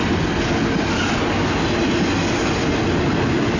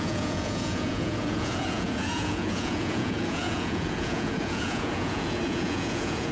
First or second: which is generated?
second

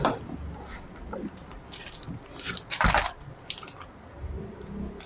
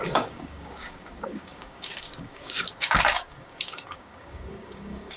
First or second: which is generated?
second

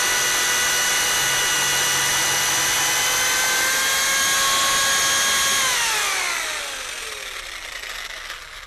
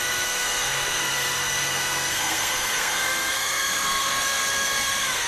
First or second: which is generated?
second